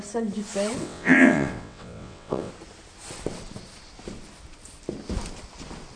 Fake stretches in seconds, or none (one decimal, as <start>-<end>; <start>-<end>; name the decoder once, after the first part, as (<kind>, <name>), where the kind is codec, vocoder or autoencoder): 0.8-2.5 (vocoder, WaveNeXt)